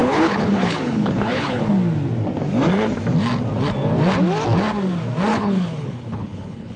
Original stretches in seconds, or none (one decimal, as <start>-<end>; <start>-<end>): 1.7-5.3